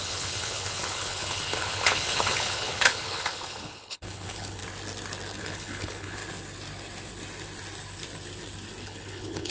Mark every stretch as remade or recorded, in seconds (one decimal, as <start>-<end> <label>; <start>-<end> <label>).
0.0-4.6 remade; 4.6-5.4 recorded; 5.4-6.2 remade; 6.2-8.8 recorded; 8.8-9.5 remade